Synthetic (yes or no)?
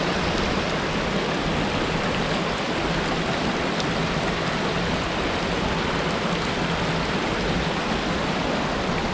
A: no